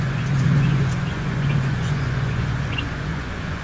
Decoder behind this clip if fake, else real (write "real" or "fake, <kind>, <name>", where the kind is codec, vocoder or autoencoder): fake, vocoder, Vocos